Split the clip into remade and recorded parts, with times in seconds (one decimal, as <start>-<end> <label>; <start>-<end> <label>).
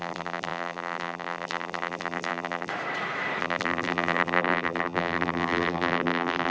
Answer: 0.0-2.7 remade; 2.7-3.4 recorded; 3.4-6.5 remade